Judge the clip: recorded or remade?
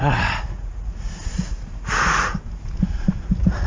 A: remade